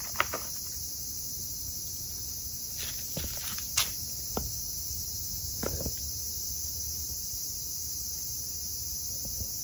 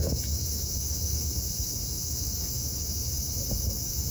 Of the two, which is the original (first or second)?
first